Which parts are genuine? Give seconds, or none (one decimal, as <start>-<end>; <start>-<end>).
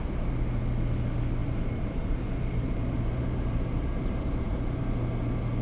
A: 0.0-1.4; 4.8-5.6